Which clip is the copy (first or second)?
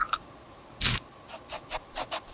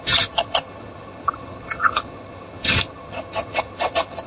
second